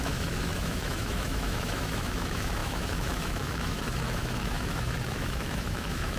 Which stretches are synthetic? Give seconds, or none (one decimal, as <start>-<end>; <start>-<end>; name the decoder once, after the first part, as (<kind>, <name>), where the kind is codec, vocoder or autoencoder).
0.0-6.2 (autoencoder, DAC-VAE)